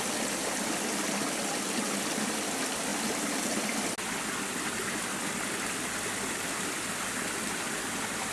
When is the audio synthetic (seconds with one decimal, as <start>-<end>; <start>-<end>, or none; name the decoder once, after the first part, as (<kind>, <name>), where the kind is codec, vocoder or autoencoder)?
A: none